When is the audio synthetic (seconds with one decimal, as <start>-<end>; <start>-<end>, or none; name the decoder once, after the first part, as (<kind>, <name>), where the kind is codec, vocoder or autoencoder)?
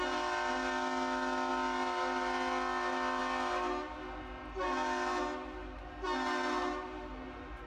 none